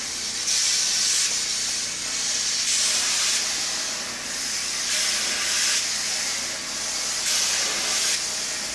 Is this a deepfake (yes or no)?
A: no